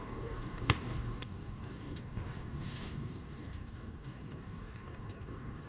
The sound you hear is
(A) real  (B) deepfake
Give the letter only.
B